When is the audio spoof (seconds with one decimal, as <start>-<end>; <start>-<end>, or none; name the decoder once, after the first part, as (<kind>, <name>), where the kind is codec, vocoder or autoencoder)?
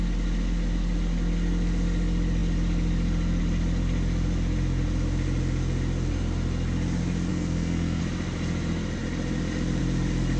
7.3-8.0 (codec, SNAC)